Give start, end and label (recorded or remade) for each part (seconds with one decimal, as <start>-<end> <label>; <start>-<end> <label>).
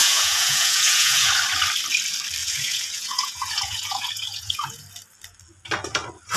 0.0-1.3 remade; 1.3-2.4 recorded; 2.4-4.8 remade; 4.8-6.4 recorded